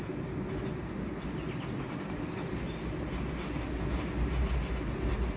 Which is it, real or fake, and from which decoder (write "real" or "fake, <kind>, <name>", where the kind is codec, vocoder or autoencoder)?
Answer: real